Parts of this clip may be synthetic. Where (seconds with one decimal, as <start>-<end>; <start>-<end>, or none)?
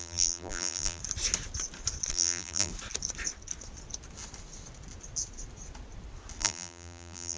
0.0-1.0; 2.1-2.7; 6.4-7.4